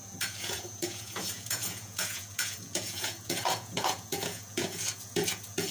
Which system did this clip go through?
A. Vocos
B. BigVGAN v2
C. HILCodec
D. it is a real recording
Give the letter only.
A